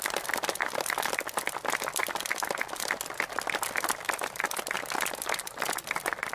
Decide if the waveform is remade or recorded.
recorded